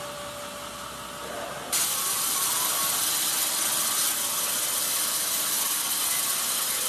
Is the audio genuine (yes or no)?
yes